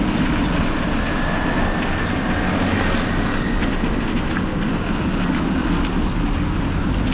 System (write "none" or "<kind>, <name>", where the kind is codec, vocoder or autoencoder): none